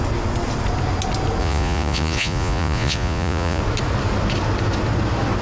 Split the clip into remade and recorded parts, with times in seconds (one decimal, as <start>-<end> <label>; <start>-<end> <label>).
0.0-1.4 recorded; 1.4-3.6 remade; 3.6-5.4 recorded